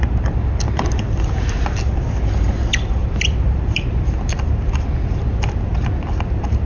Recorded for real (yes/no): yes